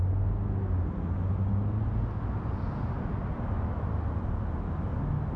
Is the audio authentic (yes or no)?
yes